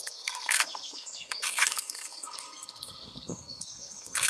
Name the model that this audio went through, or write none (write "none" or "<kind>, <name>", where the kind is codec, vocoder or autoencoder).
codec, SNAC